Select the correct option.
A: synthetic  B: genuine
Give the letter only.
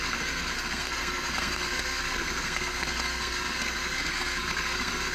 A